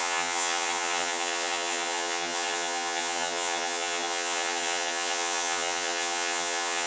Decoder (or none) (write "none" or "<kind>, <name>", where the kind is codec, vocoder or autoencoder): vocoder, HiFi-GAN